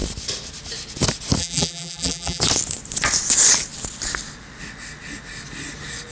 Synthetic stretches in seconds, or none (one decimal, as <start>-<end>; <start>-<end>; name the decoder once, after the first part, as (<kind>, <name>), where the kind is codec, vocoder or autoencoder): 1.4-2.4 (vocoder, BigVGAN v2)